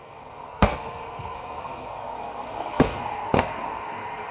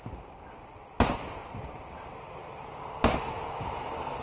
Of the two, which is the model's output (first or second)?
first